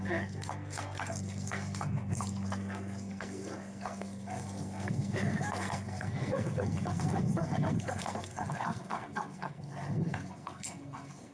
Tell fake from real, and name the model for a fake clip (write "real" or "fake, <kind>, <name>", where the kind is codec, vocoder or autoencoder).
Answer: fake, codec, SNAC